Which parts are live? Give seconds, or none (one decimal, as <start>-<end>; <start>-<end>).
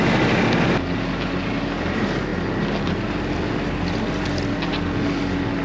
0.0-5.6